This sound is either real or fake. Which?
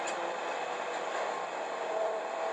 fake